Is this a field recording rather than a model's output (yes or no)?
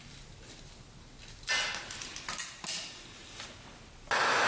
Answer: yes